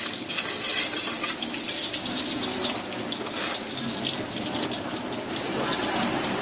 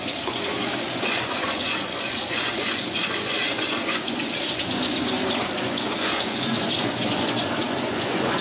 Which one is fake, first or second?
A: second